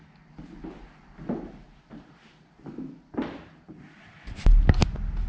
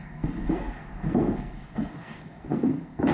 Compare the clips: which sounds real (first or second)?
first